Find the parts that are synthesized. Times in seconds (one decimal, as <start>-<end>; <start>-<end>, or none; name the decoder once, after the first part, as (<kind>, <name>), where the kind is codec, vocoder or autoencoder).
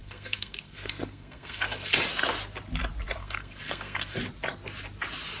0.0-1.9 (codec, SNAC); 3.2-4.2